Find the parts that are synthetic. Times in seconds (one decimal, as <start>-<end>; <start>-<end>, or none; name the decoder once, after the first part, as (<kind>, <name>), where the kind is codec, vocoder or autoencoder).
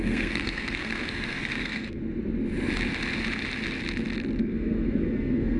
0.0-2.0 (codec, SNAC); 4.4-5.6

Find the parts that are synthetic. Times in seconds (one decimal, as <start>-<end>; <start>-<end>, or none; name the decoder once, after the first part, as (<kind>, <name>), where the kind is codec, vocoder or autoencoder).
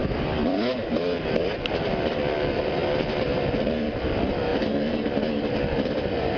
0.7-6.4 (vocoder, BigVGAN v2)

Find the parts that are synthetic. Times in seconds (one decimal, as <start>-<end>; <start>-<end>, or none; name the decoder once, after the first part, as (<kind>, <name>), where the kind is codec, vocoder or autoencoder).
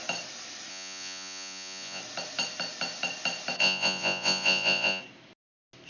0.7-2.0 (vocoder, Vocos); 3.6-5.0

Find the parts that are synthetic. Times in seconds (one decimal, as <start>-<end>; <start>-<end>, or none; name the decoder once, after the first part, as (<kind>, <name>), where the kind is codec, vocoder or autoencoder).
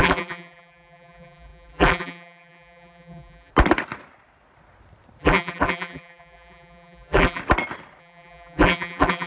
0.0-3.5 (vocoder, BigVGAN v2); 5.2-7.4; 8.0-9.3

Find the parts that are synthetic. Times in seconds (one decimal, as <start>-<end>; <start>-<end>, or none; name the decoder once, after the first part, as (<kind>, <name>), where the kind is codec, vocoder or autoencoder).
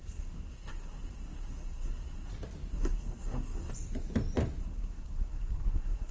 0.0-2.3 (codec, SNAC); 2.7-3.7; 4.6-6.1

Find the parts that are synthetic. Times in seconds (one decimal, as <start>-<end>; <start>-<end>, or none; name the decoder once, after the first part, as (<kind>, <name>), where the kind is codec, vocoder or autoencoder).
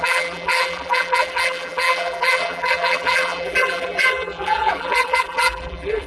0.0-6.1 (vocoder, BigVGAN v2)